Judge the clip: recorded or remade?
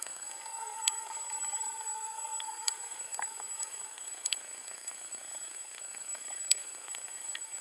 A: remade